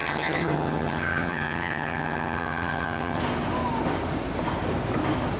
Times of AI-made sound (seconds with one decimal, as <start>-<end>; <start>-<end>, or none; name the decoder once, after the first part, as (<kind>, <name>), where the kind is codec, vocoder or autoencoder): 0.0-3.2 (vocoder, HiFi-GAN)